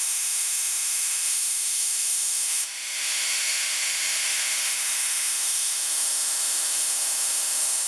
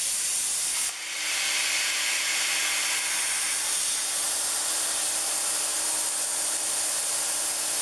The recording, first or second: second